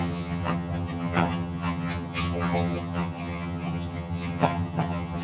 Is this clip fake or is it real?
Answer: fake